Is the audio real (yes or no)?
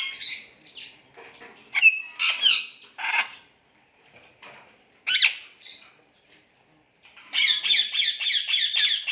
yes